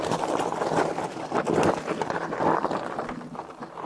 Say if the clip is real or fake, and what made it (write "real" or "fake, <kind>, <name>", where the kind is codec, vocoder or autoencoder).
real